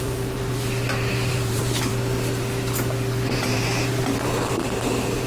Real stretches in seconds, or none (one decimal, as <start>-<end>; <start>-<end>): 1.9-3.3